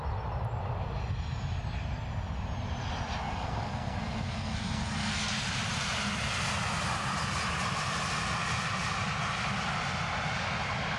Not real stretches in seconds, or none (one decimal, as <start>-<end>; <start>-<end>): 3.2-5.3